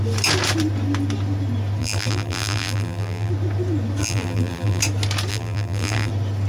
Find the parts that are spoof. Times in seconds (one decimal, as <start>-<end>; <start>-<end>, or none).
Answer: 1.8-3.3; 4.0-4.8; 5.3-6.1